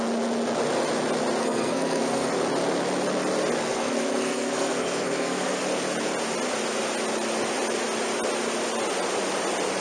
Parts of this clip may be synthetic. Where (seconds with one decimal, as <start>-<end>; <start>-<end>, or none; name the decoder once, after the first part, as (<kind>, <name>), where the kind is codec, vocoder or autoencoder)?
1.4-2.3 (codec, SNAC); 3.7-5.6

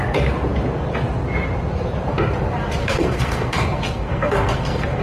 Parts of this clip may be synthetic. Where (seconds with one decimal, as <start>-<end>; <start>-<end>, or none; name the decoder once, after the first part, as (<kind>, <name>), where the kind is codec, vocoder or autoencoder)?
2.8-5.0 (codec, SNAC)